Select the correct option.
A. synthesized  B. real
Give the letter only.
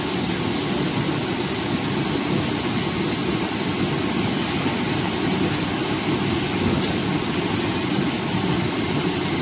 B